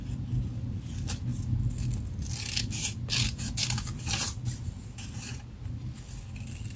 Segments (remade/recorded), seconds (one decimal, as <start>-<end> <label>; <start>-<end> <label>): 0.0-6.8 recorded